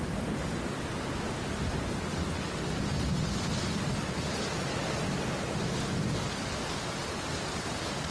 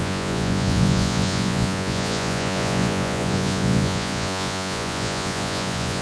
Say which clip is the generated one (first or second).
second